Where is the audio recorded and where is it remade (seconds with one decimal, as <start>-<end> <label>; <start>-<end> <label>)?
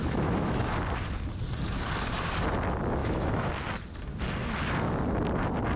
0.0-0.6 remade; 0.6-3.0 recorded; 3.0-3.5 remade; 3.5-5.8 recorded